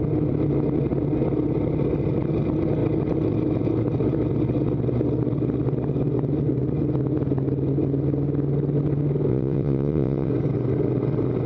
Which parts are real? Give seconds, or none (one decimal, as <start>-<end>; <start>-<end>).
0.0-9.3; 10.3-11.5